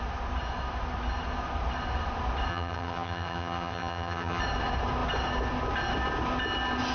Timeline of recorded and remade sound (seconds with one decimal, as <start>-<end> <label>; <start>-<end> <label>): 0.0-2.5 recorded; 2.5-4.4 remade; 4.4-6.9 recorded

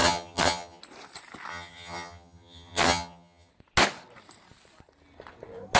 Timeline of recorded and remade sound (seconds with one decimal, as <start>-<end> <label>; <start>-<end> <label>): 0.0-0.8 remade; 0.8-1.5 recorded; 1.5-3.5 remade; 3.5-5.8 recorded